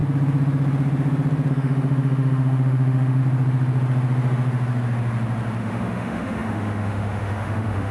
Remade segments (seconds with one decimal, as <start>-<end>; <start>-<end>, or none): 1.5-3.2; 5.6-7.9